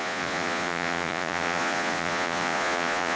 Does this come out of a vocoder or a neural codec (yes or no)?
yes